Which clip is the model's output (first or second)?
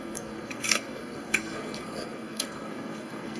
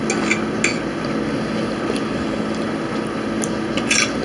first